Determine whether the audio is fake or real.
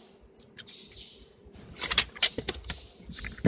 real